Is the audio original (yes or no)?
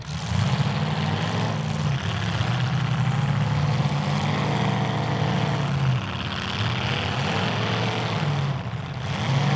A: yes